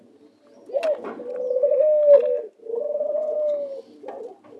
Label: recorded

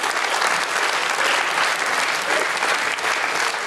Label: recorded